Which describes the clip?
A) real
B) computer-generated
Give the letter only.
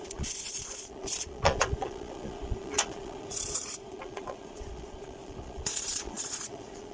B